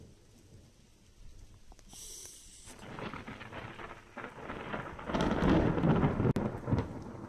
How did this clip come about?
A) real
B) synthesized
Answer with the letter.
A